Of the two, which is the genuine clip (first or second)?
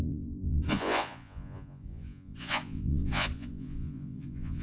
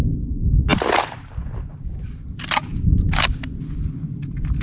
second